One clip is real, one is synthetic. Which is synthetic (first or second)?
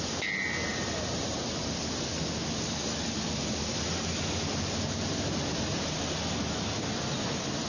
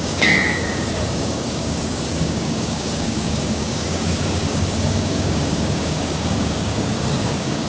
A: second